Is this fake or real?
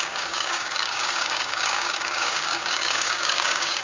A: fake